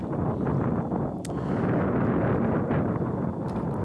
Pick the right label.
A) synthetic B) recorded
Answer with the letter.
B